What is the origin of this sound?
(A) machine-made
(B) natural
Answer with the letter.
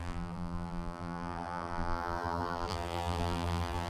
A